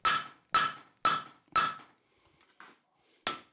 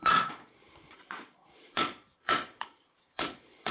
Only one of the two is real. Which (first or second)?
first